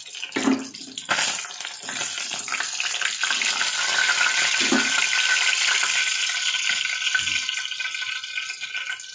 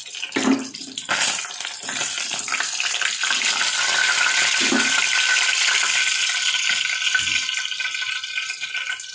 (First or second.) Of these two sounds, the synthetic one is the second